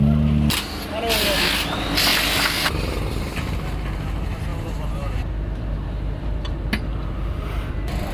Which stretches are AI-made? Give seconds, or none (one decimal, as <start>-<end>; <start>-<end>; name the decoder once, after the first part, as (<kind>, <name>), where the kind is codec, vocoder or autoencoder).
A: none